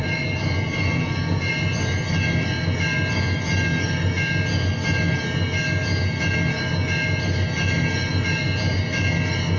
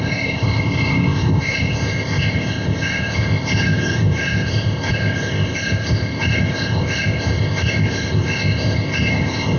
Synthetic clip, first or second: second